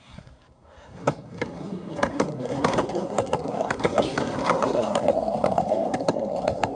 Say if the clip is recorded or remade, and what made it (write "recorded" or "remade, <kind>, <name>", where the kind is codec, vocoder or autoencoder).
remade, codec, SNAC